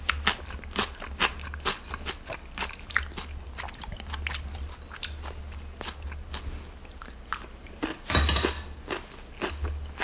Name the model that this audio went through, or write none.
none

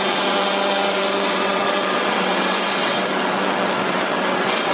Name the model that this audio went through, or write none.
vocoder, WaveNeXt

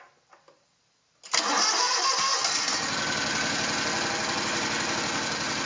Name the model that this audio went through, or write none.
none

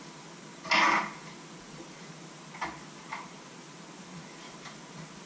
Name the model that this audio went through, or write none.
none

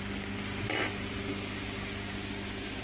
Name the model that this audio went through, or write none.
none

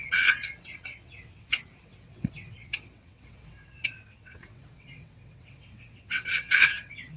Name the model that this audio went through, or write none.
vocoder, WaveNeXt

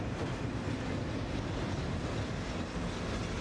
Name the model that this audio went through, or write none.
none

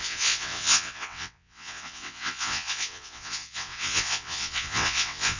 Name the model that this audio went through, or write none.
vocoder, WaveNeXt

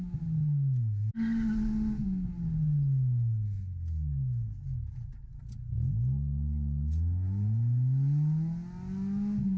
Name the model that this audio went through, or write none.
none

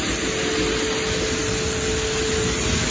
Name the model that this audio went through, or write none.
none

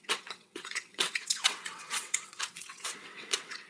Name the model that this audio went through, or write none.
vocoder, WaveNeXt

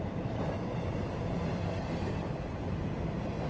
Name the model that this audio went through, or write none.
none